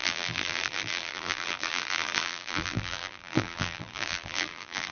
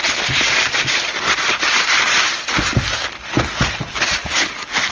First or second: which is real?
second